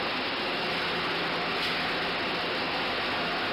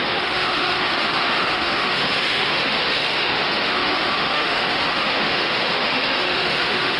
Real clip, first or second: first